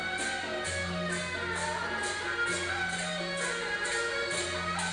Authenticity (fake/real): real